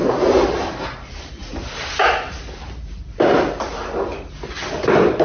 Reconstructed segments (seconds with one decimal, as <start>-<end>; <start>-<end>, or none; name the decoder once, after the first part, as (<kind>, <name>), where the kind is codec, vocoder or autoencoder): none